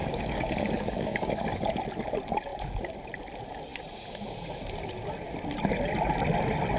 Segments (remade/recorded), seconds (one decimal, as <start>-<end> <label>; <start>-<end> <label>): 0.0-1.7 remade; 1.7-6.8 recorded